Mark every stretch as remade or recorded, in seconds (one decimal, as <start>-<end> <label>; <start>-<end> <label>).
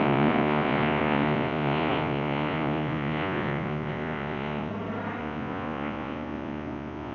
0.0-4.7 remade; 4.7-5.2 recorded; 5.2-7.1 remade